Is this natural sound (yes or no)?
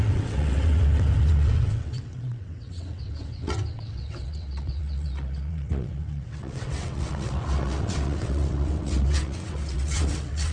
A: no